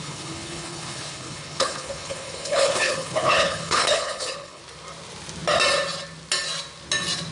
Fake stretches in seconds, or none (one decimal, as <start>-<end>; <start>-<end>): 0.0-4.6